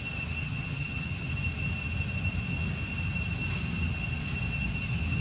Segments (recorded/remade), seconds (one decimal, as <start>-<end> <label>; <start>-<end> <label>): 0.0-0.4 recorded; 0.4-1.3 remade; 1.3-5.2 recorded